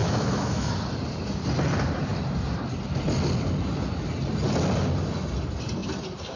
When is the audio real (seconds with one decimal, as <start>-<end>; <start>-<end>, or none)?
0.7-6.4